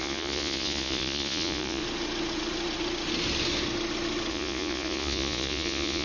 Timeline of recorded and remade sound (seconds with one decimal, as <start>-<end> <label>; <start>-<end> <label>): 0.0-1.8 remade; 1.8-4.3 recorded; 4.3-6.0 remade